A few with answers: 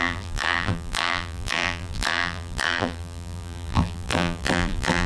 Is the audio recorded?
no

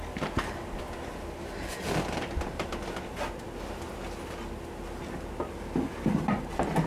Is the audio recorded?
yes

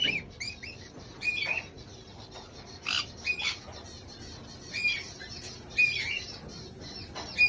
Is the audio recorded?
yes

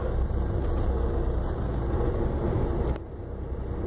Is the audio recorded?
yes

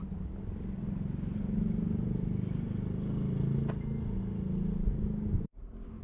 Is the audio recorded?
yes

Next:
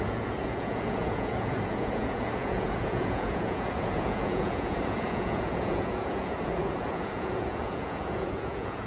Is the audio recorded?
no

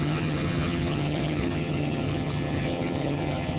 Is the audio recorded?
no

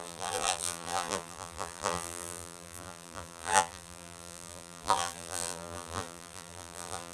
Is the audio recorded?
no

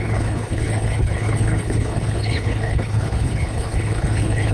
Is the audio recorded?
no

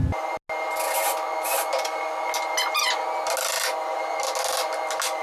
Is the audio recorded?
yes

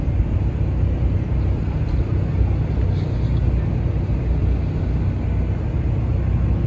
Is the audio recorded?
yes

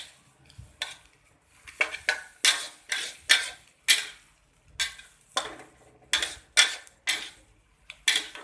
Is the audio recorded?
yes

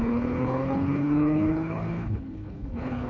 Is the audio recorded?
no